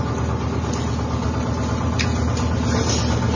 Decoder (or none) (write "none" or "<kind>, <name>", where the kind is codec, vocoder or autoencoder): none